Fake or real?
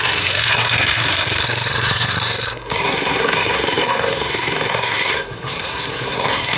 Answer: fake